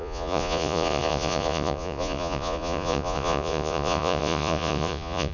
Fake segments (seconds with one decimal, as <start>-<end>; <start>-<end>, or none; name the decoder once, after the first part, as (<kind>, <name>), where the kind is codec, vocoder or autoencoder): 0.0-5.3 (vocoder, Vocos)